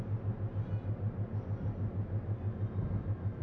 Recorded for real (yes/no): yes